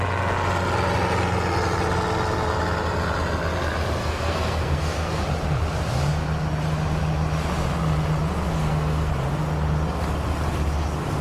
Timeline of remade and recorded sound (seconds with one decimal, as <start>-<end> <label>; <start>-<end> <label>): 0.0-4.0 recorded; 4.0-5.2 remade; 5.2-8.6 recorded; 8.6-9.1 remade; 9.1-11.2 recorded